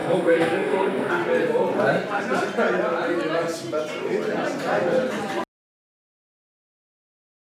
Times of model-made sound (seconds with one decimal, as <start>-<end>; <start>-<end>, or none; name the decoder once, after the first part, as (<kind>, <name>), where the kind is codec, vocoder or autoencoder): 0.0-1.1 (codec, SNAC)